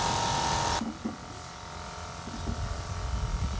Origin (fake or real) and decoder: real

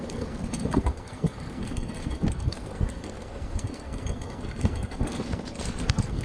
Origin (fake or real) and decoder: fake, codec, SNAC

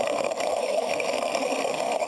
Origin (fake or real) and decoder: fake, codec, SNAC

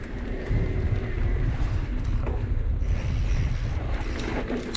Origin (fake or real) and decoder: real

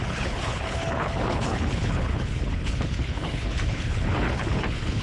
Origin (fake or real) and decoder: fake, codec, HILCodec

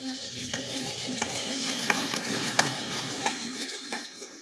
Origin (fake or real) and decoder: fake, codec, SNAC